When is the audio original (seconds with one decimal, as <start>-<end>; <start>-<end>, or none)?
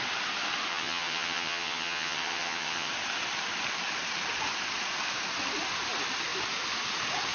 0.0-0.7; 2.9-7.3